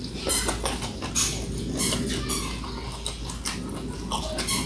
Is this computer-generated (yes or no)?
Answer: no